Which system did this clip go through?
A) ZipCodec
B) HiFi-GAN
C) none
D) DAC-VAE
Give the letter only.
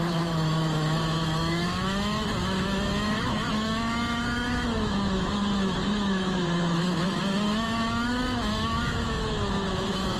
D